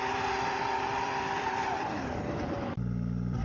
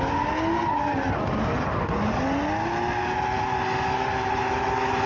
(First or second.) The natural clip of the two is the second